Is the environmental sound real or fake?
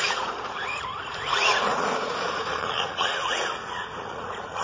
fake